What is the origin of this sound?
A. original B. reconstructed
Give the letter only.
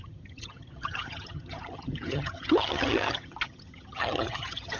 B